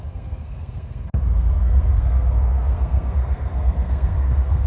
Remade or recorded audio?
remade